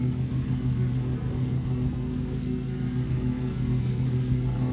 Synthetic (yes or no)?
yes